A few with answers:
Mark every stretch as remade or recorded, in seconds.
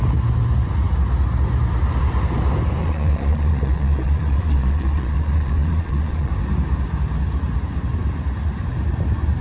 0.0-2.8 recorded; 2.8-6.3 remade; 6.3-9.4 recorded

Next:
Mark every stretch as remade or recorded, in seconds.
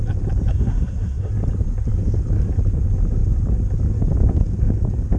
0.0-0.5 recorded; 0.5-1.3 remade; 1.3-5.2 recorded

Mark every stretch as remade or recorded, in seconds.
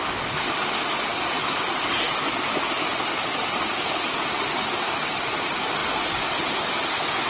0.0-1.1 recorded; 1.1-3.6 remade; 3.6-7.3 recorded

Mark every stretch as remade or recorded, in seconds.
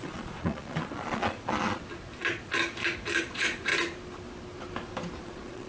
0.0-1.8 remade; 1.8-3.2 recorded; 3.2-3.7 remade; 3.7-5.2 recorded; 5.2-5.7 remade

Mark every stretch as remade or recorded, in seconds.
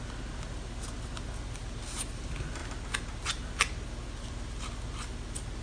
0.0-5.6 recorded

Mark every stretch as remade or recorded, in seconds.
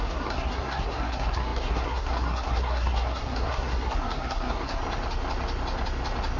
0.0-4.8 remade; 4.8-6.4 recorded